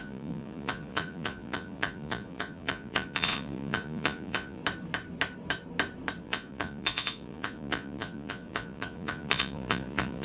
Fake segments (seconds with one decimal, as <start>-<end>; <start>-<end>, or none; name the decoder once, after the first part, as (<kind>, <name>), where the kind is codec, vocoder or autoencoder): 0.0-4.6 (vocoder, Vocos); 6.2-10.2